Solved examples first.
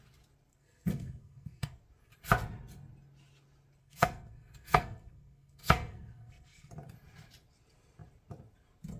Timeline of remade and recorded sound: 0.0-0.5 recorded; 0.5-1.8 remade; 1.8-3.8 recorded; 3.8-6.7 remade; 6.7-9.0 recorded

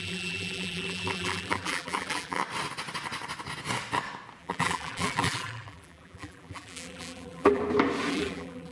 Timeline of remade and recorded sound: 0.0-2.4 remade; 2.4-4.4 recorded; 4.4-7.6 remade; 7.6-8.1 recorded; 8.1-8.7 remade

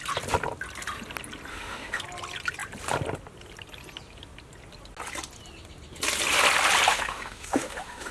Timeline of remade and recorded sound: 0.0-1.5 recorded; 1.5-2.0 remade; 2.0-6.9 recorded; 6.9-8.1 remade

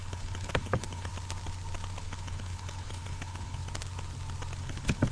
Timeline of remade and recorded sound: 0.0-1.1 remade; 1.1-2.0 recorded; 2.0-3.6 remade; 3.6-4.6 recorded; 4.6-5.1 remade

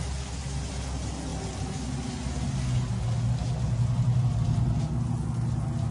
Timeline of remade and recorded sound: 0.0-5.9 recorded